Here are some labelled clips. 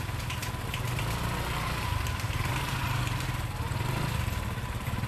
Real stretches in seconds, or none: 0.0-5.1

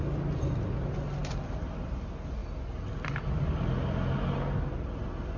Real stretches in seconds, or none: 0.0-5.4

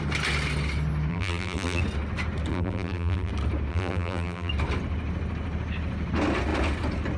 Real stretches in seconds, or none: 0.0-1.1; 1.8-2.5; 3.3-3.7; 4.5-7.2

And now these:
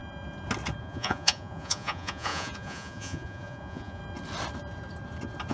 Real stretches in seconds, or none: 0.0-0.8; 4.0-5.5

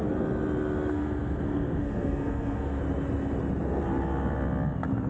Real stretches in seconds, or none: 0.0-0.9; 2.8-5.1